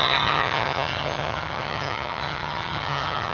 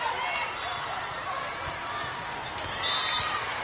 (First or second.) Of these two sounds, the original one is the second